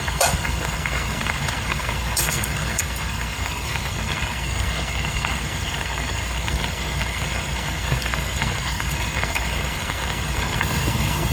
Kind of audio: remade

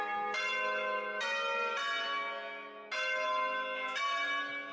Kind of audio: recorded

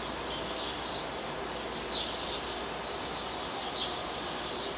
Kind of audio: recorded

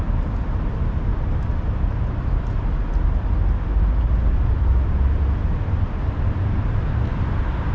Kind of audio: recorded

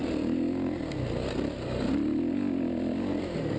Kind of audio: recorded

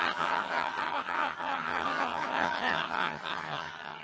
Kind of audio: remade